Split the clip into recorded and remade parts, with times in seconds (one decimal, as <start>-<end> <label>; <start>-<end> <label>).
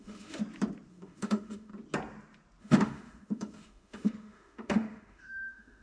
0.0-0.4 remade; 0.4-0.9 recorded; 0.9-1.7 remade; 1.7-2.6 recorded; 2.6-5.8 remade